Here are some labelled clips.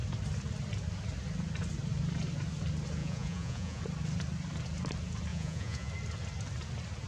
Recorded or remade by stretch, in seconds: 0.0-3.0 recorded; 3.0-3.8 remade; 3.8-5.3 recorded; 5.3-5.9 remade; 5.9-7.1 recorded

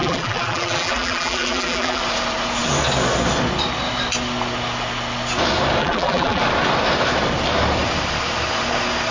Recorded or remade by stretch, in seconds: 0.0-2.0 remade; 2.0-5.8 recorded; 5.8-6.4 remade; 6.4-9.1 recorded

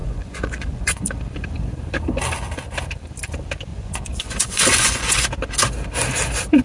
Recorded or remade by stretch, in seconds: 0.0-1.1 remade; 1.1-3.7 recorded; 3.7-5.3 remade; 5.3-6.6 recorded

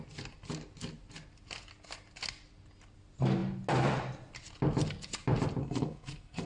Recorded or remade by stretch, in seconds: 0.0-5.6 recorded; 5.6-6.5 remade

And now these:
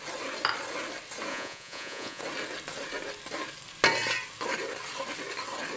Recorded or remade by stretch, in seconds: 0.0-1.3 recorded; 1.3-2.2 remade; 2.2-5.8 recorded

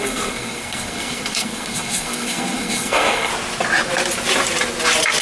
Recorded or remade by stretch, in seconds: 0.0-3.3 remade; 3.3-5.2 recorded

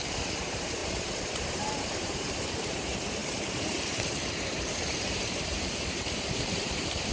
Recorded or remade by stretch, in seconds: 0.0-7.1 remade

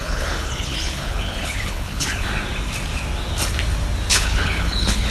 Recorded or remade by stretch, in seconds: 0.0-2.3 remade; 2.3-4.1 recorded; 4.1-5.1 remade